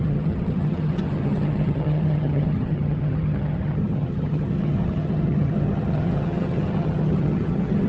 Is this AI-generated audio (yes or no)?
yes